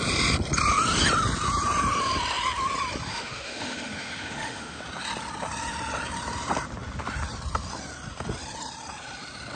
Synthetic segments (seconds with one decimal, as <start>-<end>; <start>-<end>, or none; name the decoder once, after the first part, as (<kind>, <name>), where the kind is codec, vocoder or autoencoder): 3.1-4.8 (autoencoder, DAC-VAE)